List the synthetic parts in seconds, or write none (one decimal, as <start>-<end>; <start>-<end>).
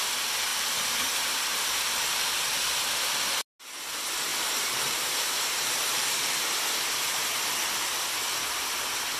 0.5-2.3; 4.3-7.2